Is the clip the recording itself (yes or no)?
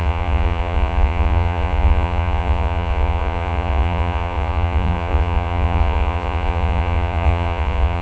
no